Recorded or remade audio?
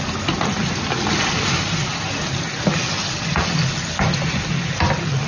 recorded